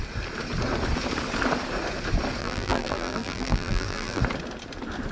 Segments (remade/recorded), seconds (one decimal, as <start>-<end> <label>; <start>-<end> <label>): 0.0-2.4 recorded; 2.4-4.2 remade; 4.2-5.1 recorded